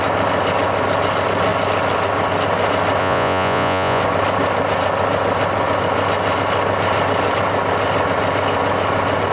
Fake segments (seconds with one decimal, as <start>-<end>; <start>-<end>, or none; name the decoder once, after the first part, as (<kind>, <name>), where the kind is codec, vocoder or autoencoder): 3.0-4.0 (vocoder, Vocos)